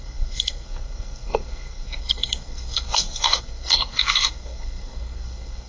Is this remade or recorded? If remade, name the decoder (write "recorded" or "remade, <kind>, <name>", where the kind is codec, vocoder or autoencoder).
remade, codec, SNAC